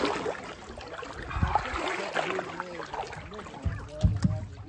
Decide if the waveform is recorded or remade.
recorded